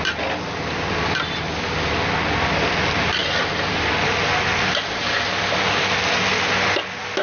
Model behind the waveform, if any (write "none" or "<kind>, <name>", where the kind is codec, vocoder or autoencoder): none